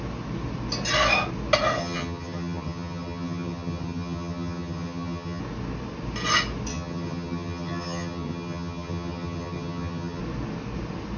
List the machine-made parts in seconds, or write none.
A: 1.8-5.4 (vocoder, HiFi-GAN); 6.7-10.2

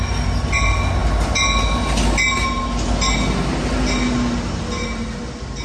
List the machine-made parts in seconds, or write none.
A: none

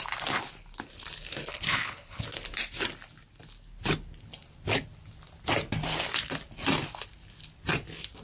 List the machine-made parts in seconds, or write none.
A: 1.5-2.2 (codec, HILCodec)

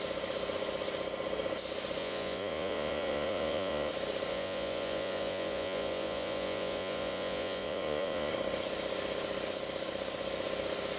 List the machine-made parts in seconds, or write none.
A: 2.0-3.9 (vocoder, Vocos); 4.3-8.3